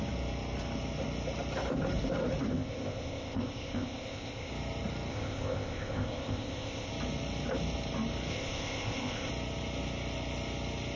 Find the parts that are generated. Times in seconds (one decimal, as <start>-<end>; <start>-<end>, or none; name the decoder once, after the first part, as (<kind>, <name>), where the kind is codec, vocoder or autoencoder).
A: 2.5-4.5 (codec, ZipCodec); 5.1-6.9; 8.3-9.3